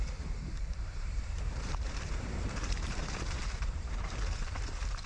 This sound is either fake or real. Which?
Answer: fake